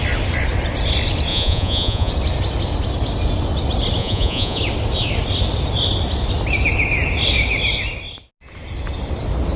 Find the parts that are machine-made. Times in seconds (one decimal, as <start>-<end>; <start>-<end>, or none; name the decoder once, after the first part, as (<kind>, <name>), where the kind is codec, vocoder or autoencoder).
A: 1.3-2.1 (vocoder, Vocos); 4.0-4.6